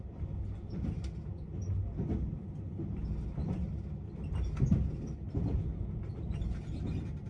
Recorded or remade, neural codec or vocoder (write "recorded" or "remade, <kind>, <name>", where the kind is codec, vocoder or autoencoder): recorded